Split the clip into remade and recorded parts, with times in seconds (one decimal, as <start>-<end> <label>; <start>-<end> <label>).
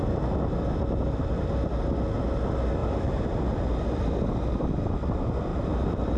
0.0-2.8 recorded; 2.8-3.4 remade; 3.4-5.5 recorded; 5.5-6.2 remade